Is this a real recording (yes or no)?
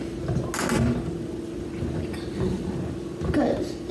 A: yes